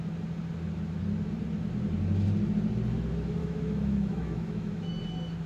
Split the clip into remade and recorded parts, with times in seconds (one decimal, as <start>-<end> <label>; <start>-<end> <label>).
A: 0.0-3.4 recorded; 3.4-4.9 remade; 4.9-5.5 recorded